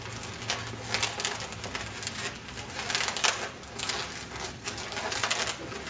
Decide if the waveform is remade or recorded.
recorded